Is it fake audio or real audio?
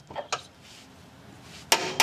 real